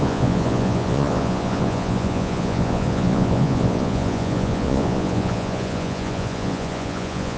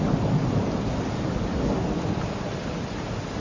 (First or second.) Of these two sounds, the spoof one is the first